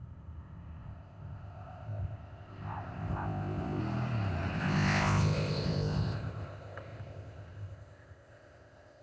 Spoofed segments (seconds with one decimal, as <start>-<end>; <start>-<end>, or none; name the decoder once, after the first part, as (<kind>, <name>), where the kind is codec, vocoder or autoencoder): 0.0-3.8 (codec, ZipCodec); 4.5-9.0